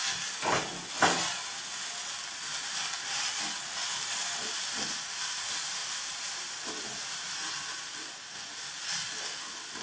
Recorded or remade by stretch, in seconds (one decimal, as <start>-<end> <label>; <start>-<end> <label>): 0.0-5.8 recorded; 5.8-7.7 remade; 7.7-9.8 recorded